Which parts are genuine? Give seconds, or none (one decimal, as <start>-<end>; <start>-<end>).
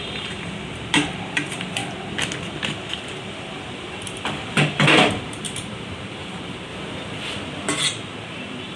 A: 1.8-3.2; 6.7-7.8